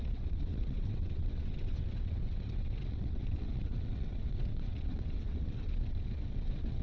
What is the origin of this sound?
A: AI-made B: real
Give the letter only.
A